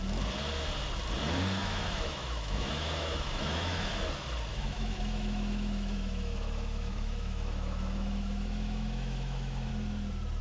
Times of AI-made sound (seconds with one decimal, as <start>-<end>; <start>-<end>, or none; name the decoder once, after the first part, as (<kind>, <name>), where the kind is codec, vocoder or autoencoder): 1.6-3.9 (autoencoder, DAC-VAE); 4.5-9.7